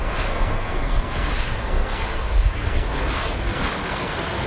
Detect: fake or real fake